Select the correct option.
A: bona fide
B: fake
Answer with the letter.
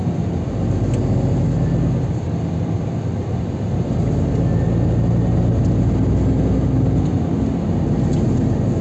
A